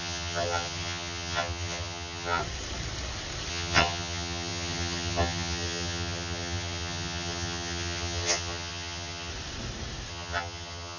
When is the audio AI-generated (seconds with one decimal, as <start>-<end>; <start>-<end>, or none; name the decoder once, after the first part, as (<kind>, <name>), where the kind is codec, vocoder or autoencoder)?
0.0-2.4 (vocoder, HiFi-GAN); 3.5-9.3; 10.1-11.0